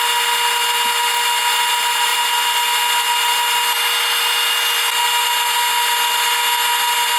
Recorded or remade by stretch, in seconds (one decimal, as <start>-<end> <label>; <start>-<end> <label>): 0.0-7.2 recorded